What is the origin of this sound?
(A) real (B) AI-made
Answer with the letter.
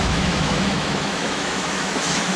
B